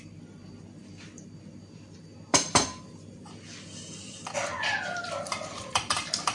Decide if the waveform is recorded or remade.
remade